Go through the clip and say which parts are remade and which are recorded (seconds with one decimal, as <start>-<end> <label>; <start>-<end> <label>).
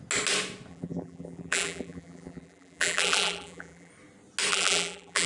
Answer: 0.0-0.7 recorded; 0.7-3.9 remade; 3.9-4.5 recorded; 4.5-5.3 remade